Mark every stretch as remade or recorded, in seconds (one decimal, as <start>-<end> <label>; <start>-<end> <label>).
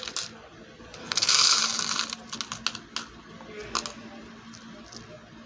0.0-1.0 recorded; 1.0-1.6 remade; 1.6-5.5 recorded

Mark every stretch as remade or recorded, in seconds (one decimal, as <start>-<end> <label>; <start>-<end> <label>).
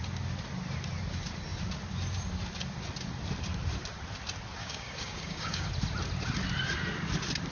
0.0-4.6 recorded; 4.6-5.7 remade; 5.7-7.5 recorded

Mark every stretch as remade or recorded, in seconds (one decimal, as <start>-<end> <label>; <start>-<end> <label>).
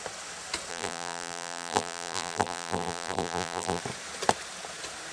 0.0-0.7 recorded; 0.7-3.8 remade; 3.8-5.1 recorded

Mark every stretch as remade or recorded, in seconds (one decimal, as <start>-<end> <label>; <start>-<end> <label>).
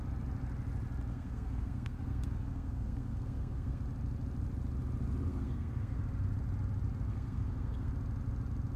0.0-1.1 recorded; 1.1-3.8 remade; 3.8-5.3 recorded; 5.3-6.0 remade; 6.0-7.1 recorded; 7.1-7.9 remade; 7.9-8.8 recorded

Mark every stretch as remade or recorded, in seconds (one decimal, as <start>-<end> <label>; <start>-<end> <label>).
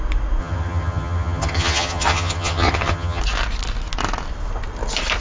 0.0-0.4 recorded; 0.4-3.2 remade; 3.2-5.2 recorded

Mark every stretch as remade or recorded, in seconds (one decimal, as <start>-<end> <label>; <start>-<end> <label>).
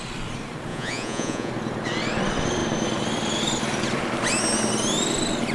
0.0-0.7 recorded; 0.7-1.5 remade; 1.5-5.5 recorded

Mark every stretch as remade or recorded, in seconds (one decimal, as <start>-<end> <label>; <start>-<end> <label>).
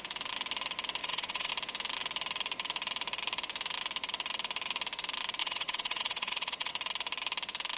0.0-1.0 recorded; 1.0-1.5 remade; 1.5-5.4 recorded; 5.4-6.7 remade; 6.7-7.8 recorded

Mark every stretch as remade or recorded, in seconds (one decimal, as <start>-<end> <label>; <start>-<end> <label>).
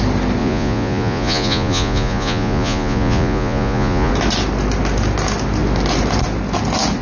0.0-0.4 recorded; 0.4-4.1 remade; 4.1-7.0 recorded